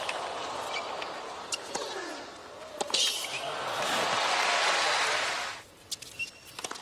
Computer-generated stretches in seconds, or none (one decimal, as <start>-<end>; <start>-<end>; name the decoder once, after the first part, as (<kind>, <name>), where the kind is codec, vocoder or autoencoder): none